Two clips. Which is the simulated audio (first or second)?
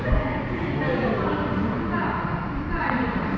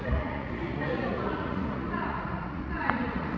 second